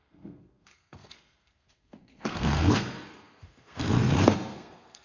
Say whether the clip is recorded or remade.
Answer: remade